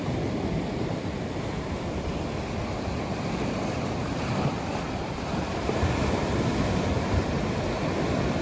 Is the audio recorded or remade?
remade